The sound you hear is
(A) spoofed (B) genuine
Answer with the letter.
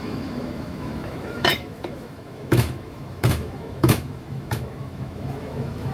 A